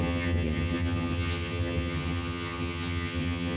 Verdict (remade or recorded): remade